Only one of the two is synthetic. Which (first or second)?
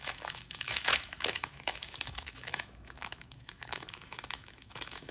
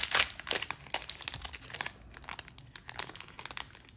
first